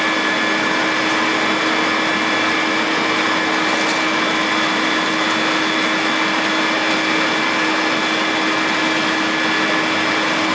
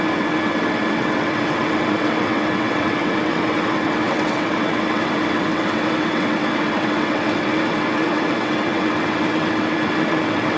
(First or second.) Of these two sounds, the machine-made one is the second